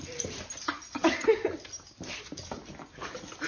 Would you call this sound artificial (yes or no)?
no